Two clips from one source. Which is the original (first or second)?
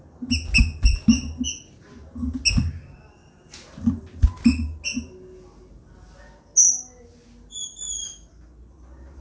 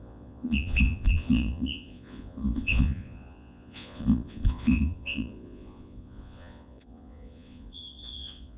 first